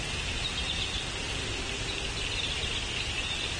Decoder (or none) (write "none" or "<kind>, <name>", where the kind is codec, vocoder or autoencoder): none